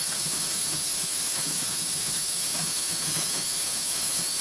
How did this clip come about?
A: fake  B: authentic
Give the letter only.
A